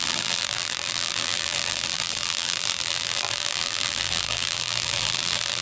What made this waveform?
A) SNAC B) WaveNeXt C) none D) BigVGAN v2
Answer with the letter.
D